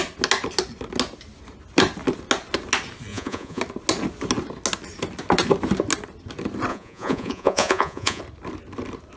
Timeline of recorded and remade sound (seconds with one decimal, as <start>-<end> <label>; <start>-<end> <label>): 0.0-3.1 recorded; 3.1-3.6 remade; 3.6-6.7 recorded; 6.7-8.2 remade; 8.2-9.2 recorded